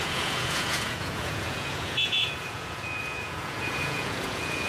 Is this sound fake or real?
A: fake